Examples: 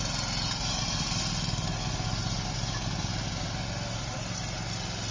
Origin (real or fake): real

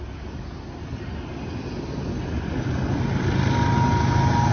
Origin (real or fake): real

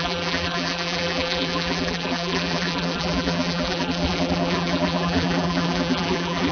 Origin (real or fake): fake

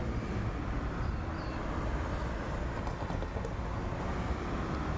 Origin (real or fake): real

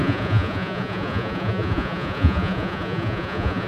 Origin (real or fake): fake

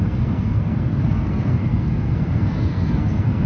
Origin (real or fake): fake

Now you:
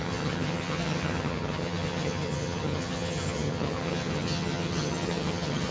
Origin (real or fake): fake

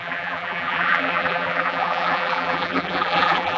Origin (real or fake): fake